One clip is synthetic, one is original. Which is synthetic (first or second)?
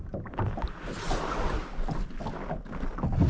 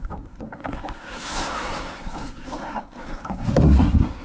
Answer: second